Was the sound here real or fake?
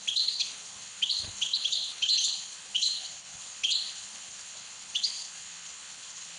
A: fake